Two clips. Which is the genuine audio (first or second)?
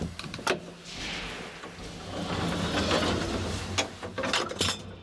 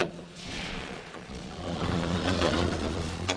first